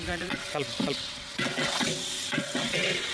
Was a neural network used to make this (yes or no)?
yes